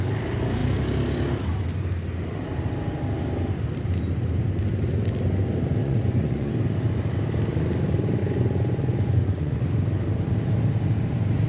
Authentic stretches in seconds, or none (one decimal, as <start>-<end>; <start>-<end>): 0.0-5.8; 6.5-8.2; 9.6-11.5